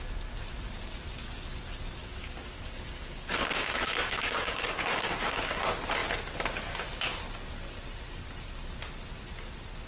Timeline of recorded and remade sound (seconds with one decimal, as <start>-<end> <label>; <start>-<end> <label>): 0.0-2.0 recorded; 2.0-5.6 remade; 5.6-9.9 recorded